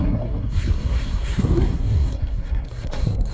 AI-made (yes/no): yes